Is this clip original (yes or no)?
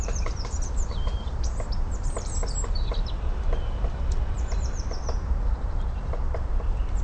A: no